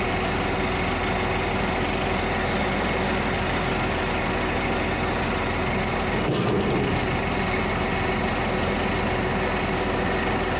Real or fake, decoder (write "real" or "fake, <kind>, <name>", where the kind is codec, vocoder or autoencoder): real